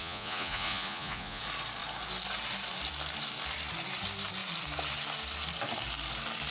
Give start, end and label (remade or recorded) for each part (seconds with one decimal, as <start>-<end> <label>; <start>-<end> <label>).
0.0-1.4 remade; 1.4-6.5 recorded